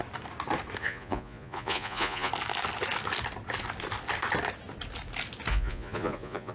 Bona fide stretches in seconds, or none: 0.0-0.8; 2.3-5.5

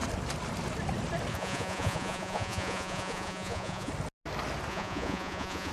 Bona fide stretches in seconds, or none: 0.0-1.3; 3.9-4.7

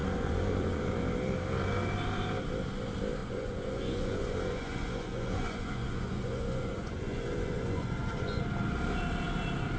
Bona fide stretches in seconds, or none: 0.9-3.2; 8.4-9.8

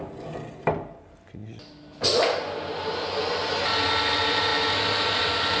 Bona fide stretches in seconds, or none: 0.0-5.6